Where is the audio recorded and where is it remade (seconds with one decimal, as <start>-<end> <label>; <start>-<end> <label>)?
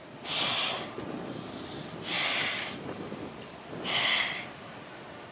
0.0-5.3 recorded